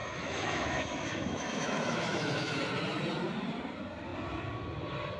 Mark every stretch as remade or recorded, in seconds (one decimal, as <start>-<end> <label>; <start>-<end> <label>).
0.0-2.6 remade; 2.6-5.2 recorded